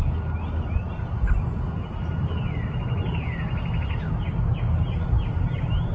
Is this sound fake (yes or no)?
no